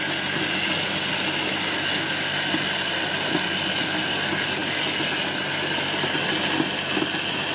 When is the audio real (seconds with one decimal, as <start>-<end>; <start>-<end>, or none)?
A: 0.0-7.5